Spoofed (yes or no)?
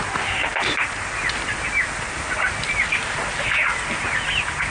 no